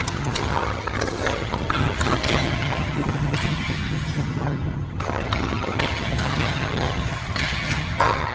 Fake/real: fake